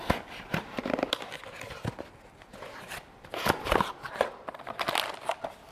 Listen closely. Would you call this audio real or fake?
real